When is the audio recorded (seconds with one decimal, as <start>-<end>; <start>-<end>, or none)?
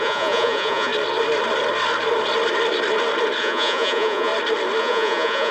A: 0.9-3.4; 4.3-4.8